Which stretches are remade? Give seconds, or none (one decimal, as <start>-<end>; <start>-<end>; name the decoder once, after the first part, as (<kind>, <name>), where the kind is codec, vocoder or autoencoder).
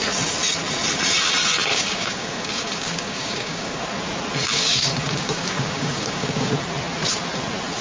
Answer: 1.7-3.8 (codec, DAC); 4.5-6.5